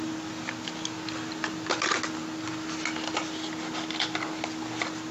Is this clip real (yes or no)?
yes